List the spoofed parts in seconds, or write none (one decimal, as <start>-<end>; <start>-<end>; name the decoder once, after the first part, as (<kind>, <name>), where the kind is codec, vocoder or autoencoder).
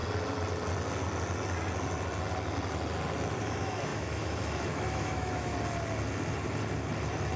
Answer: 3.4-5.5 (autoencoder, DAC-VAE)